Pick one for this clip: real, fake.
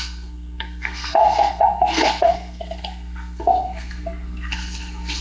fake